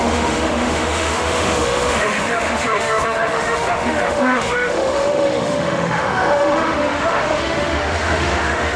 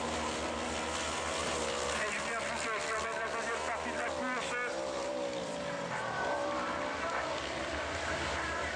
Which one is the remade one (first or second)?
first